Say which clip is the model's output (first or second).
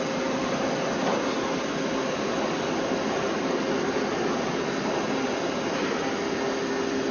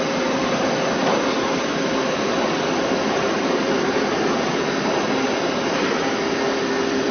second